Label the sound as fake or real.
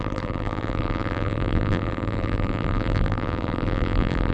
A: fake